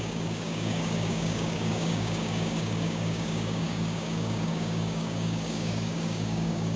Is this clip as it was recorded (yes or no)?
no